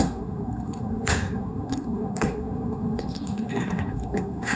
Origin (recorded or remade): remade